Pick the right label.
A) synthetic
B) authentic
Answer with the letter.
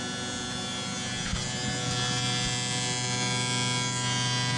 B